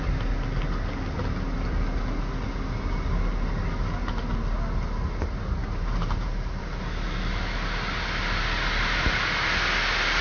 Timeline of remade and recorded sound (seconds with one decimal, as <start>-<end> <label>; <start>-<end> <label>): 0.0-5.6 recorded; 5.6-6.6 remade; 6.6-10.2 recorded